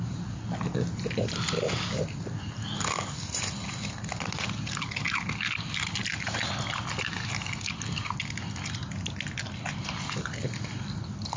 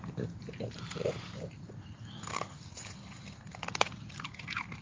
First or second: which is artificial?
second